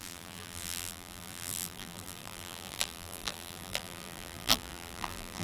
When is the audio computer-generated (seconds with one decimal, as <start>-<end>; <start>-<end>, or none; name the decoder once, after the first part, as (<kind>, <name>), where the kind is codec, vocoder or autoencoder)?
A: 0.0-5.4 (vocoder, BigVGAN v2)